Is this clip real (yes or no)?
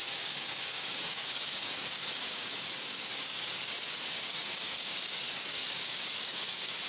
no